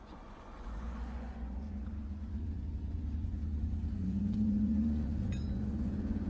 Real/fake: fake